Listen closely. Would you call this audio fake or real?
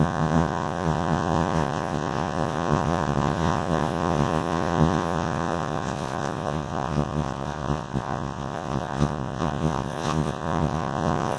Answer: fake